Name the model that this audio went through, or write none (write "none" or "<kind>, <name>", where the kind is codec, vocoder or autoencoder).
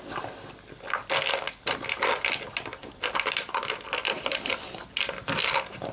none